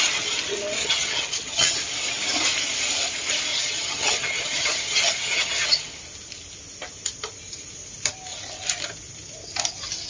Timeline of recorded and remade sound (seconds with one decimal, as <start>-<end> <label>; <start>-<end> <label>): 0.0-0.8 recorded; 0.8-1.8 remade; 1.8-3.5 recorded; 3.5-5.9 remade; 5.9-10.1 recorded